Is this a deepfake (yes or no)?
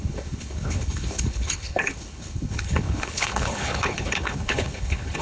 yes